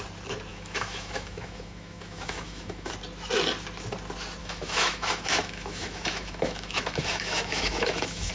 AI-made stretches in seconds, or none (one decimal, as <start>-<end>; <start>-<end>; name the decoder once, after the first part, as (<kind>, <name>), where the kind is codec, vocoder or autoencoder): 0.5-2.9 (autoencoder, DAC-VAE); 4.4-8.3